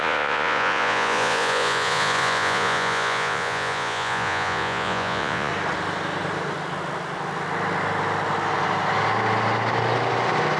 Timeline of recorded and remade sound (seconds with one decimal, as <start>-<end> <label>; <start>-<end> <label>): 0.0-5.5 remade; 5.5-10.6 recorded